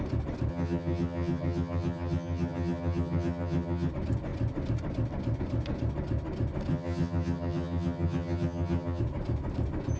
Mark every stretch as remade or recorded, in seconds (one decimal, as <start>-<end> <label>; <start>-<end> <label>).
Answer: 0.0-0.5 recorded; 0.5-3.9 remade; 3.9-6.7 recorded; 6.7-9.0 remade; 9.0-10.0 recorded